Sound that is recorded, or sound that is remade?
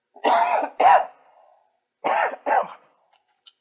recorded